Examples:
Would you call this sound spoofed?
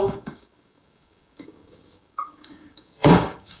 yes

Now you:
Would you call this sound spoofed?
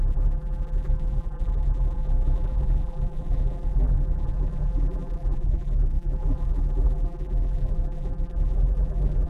yes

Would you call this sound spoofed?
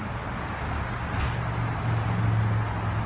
no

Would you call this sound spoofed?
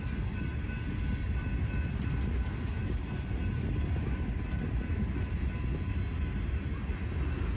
no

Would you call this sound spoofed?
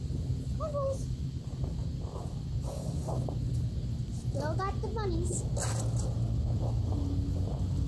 no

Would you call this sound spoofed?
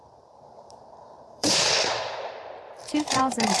yes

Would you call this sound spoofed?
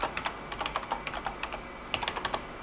no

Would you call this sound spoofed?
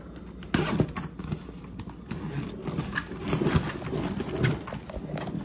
no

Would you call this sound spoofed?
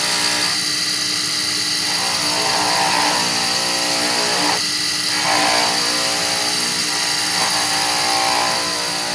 no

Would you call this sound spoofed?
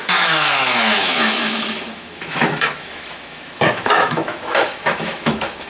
yes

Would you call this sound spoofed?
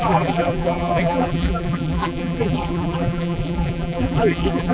yes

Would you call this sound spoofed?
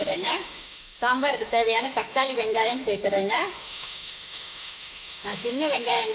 yes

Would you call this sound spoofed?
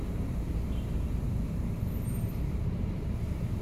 yes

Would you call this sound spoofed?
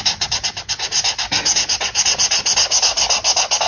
no